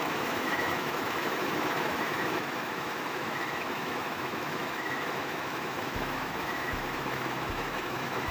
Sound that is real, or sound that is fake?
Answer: fake